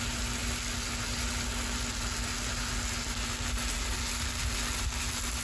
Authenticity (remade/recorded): recorded